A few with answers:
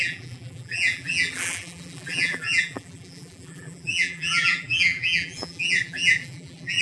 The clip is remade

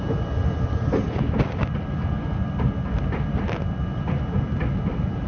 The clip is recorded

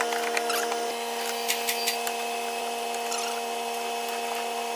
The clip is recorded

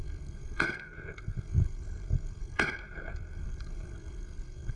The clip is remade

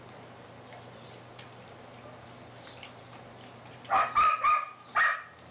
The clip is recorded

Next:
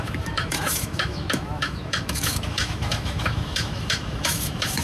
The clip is remade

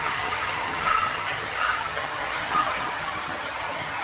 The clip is remade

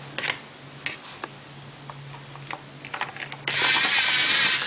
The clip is recorded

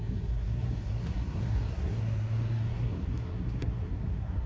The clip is remade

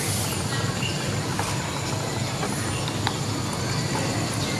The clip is recorded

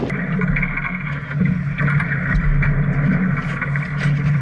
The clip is recorded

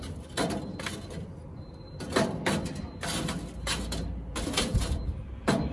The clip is recorded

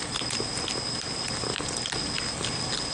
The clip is recorded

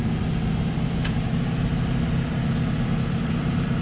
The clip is remade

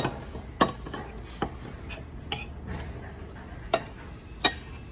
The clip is recorded